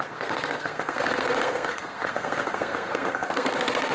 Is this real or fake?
fake